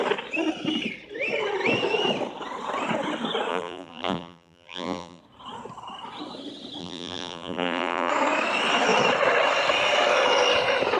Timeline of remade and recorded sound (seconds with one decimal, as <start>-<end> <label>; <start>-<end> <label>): 0.0-3.5 recorded; 3.5-5.2 remade; 5.2-6.8 recorded; 6.8-8.1 remade; 8.1-11.0 recorded